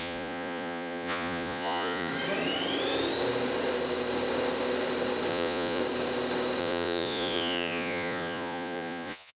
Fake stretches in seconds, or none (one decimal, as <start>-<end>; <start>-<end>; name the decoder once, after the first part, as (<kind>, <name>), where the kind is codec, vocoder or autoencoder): 0.0-2.1 (vocoder, Vocos); 5.3-5.8; 6.6-9.4